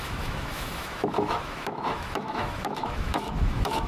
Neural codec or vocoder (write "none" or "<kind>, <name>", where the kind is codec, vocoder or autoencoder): autoencoder, DAC-VAE